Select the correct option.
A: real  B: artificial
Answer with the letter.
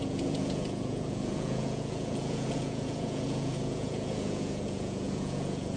B